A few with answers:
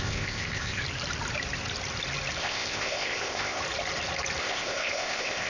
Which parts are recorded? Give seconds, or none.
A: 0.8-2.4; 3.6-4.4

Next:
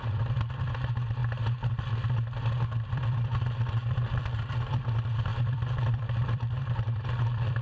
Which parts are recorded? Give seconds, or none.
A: 1.2-2.9

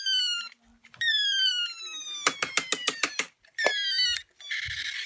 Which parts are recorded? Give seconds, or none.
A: 0.0-0.7; 1.5-2.8; 3.5-5.1

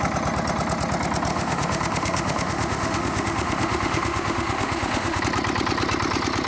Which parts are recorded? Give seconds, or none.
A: 0.0-1.3; 5.2-6.5

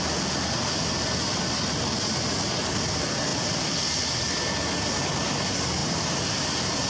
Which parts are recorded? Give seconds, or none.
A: 0.0-5.8; 6.4-6.9

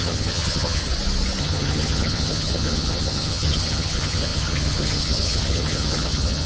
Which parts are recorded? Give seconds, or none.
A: 0.8-1.4

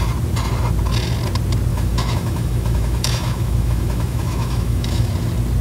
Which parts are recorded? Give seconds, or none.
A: 0.0-1.7; 5.1-5.6